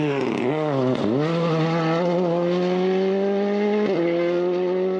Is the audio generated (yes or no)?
no